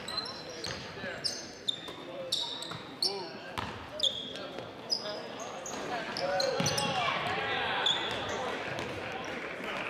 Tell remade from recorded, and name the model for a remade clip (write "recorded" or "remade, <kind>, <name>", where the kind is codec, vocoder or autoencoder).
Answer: recorded